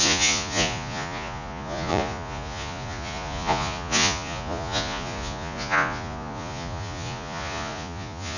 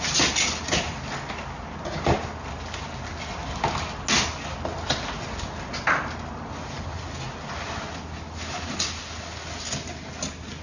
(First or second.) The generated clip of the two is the first